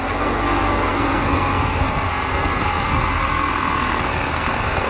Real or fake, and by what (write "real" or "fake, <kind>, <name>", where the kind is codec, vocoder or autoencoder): fake, codec, SNAC